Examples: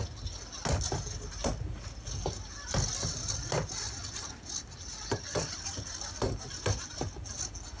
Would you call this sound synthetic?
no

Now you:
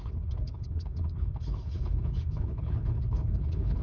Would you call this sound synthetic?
yes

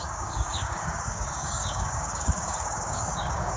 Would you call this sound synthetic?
yes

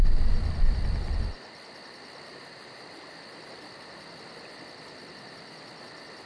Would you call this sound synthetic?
no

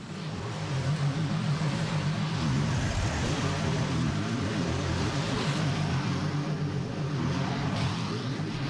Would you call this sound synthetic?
no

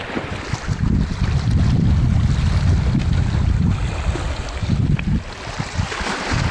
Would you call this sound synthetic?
no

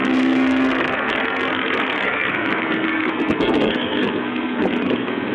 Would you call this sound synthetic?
yes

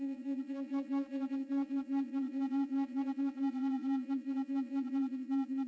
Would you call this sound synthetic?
yes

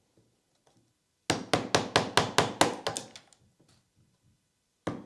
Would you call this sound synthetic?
no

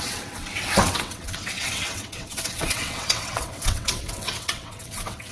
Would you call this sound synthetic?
yes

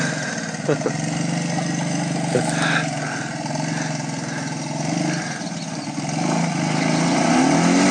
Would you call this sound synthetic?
no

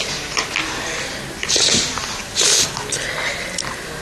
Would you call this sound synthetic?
no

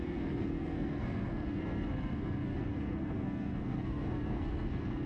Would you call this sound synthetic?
yes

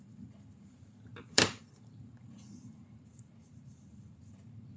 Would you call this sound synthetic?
yes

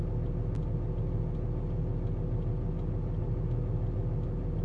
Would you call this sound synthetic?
no